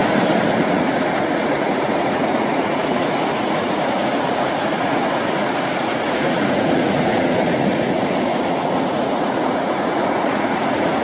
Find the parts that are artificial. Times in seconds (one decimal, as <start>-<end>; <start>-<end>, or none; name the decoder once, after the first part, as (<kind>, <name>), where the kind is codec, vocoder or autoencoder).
0.6-11.0 (vocoder, Vocos)